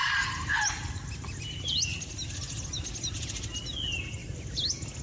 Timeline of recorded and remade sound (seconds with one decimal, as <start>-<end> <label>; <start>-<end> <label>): 0.0-5.0 recorded